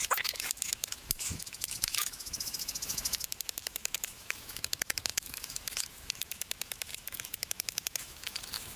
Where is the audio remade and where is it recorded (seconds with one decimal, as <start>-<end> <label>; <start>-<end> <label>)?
0.0-8.8 remade